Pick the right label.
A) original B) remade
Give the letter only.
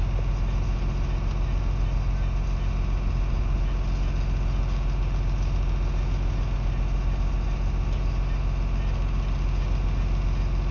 A